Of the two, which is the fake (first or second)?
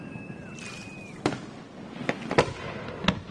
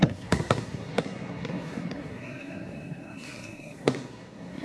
second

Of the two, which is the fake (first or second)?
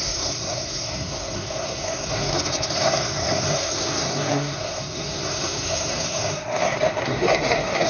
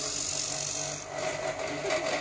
first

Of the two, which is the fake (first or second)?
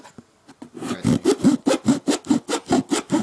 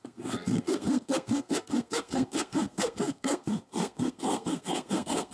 second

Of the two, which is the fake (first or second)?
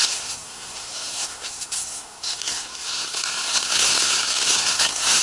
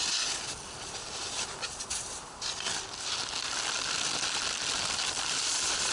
first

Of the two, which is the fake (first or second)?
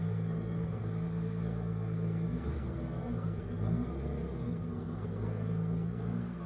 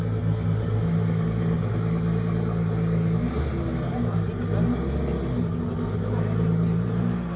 first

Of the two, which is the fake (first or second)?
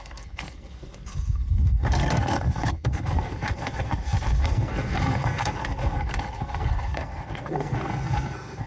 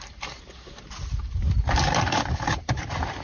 first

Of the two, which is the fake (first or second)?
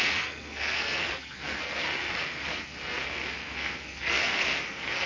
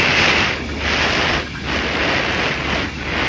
first